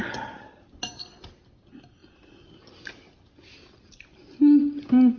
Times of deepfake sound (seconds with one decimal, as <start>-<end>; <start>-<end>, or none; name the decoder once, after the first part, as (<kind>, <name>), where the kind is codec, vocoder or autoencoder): none